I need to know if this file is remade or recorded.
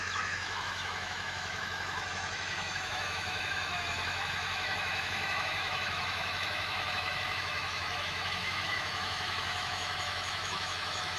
remade